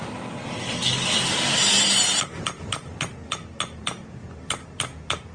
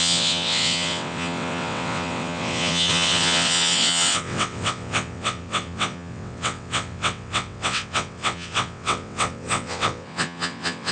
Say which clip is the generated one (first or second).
second